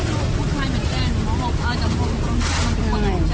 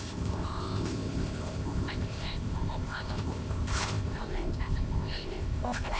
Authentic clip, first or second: first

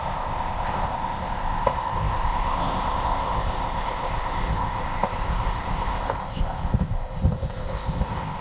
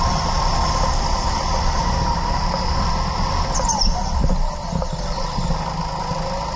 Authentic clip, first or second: second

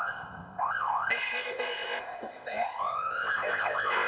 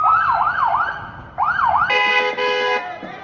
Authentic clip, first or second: second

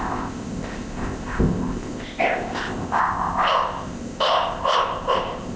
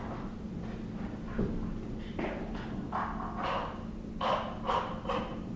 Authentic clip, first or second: second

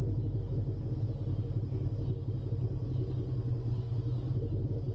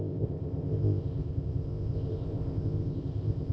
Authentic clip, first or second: first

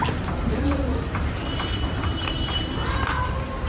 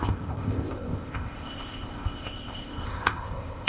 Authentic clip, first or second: first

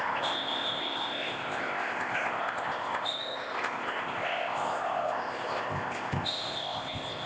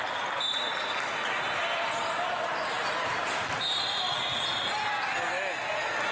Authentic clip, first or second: second